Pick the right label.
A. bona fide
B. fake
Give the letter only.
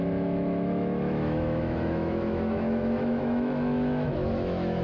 B